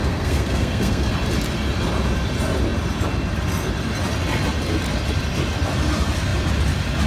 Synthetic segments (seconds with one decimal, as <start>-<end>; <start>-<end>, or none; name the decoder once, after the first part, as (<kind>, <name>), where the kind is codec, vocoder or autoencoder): 0.0-1.1 (codec, SNAC)